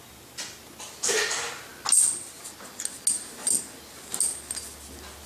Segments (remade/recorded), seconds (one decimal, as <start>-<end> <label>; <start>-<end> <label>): 0.0-5.3 recorded